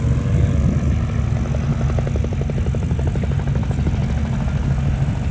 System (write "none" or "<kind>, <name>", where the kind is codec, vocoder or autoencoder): none